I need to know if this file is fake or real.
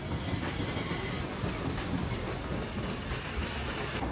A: real